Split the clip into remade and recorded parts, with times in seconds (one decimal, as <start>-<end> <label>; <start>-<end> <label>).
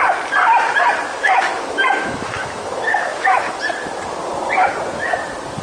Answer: 0.0-1.1 recorded; 1.1-3.6 remade; 3.6-5.6 recorded